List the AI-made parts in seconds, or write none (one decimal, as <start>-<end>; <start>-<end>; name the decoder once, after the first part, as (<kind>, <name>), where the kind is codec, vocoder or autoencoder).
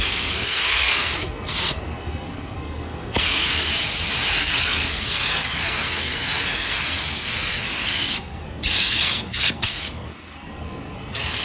0.0-3.7 (codec, SNAC); 4.4-11.4